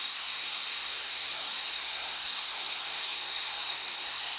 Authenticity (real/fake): fake